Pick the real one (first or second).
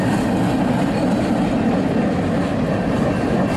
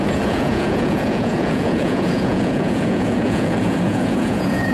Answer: first